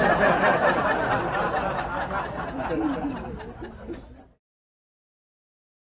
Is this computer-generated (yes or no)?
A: no